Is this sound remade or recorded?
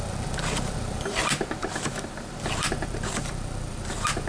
remade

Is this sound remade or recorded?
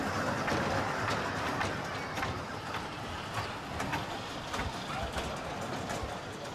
recorded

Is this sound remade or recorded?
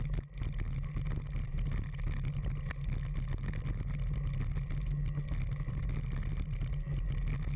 recorded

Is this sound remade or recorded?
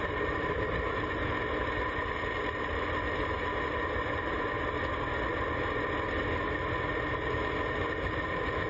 recorded